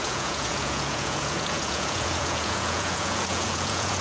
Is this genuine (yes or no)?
no